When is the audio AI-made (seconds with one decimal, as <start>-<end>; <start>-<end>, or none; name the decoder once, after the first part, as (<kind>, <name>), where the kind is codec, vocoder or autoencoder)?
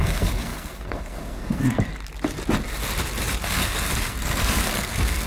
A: 0.0-1.9 (codec, SNAC); 3.4-5.3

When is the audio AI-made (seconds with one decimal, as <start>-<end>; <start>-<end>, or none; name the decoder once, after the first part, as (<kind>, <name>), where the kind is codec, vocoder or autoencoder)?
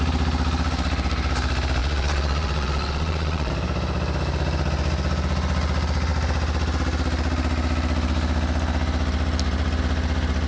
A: 1.8-3.5 (vocoder, Vocos)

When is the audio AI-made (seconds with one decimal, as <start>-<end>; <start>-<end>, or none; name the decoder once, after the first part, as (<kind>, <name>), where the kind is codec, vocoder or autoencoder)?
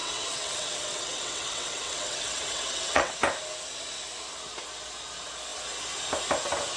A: 0.0-3.1 (vocoder, WaveNeXt)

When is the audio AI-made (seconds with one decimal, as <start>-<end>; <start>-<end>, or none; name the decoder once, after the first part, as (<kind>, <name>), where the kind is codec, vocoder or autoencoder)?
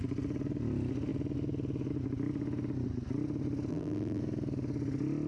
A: 3.7-4.2 (vocoder, BigVGAN v2)